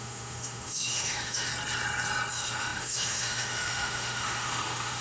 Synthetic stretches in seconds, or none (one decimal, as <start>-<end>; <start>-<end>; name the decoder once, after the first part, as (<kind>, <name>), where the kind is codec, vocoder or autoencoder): 0.0-1.5 (autoencoder, DAC-VAE); 2.3-5.0